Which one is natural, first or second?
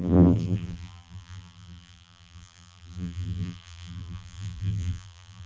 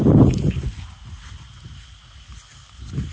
second